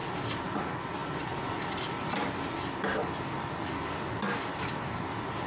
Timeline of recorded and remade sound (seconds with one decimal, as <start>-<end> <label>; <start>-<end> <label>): 0.0-0.5 remade; 0.5-1.0 recorded; 1.0-2.2 remade; 2.2-2.9 recorded; 2.9-3.7 remade; 3.7-5.5 recorded